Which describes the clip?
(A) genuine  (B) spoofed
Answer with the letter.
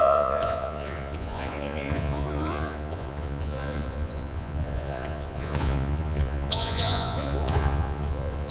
B